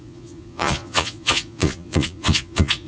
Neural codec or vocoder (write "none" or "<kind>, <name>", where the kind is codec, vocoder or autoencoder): vocoder, Vocos